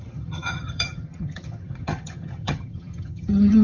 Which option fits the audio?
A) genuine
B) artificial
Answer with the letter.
B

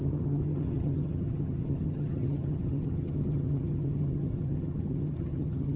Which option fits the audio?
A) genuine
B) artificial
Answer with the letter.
B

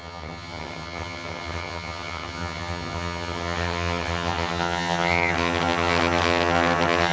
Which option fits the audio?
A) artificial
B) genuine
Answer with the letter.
A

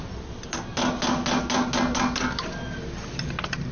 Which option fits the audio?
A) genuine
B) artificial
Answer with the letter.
A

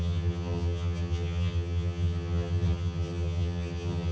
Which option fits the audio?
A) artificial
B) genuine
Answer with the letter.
A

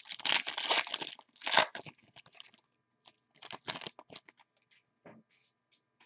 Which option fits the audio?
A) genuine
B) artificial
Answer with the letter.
A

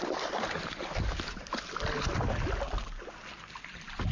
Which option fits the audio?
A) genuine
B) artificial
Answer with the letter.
A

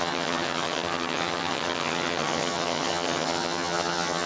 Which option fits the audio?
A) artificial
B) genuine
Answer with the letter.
A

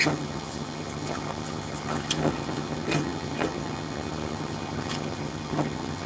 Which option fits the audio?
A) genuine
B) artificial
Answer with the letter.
B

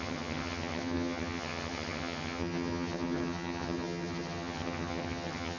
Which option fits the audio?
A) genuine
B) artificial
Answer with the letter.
B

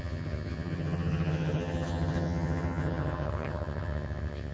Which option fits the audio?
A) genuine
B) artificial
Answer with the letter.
B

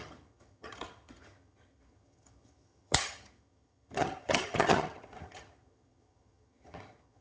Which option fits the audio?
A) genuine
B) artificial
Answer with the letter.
B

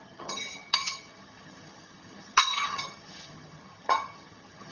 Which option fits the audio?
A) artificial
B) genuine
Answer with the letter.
A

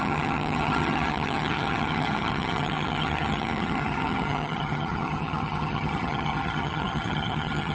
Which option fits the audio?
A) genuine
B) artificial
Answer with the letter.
B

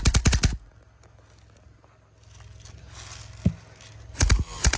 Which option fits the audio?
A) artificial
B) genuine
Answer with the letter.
B